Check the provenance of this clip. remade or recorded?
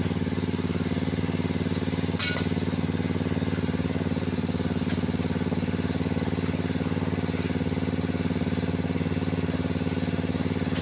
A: recorded